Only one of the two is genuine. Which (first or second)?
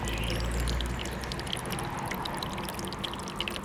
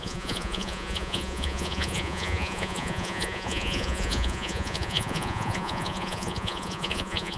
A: first